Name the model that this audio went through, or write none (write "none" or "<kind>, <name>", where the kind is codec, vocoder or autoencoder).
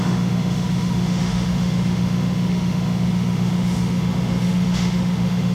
autoencoder, DAC-VAE